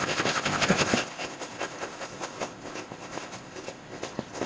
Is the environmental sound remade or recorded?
remade